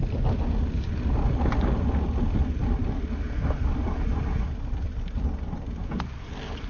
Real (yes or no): yes